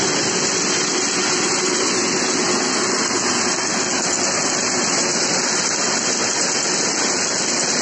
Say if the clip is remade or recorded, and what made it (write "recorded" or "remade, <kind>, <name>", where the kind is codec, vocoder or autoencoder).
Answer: recorded